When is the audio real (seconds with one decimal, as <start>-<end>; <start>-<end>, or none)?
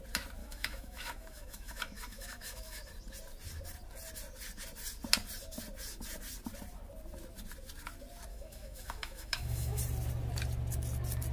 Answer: 0.0-0.4; 2.9-8.3; 9.8-11.3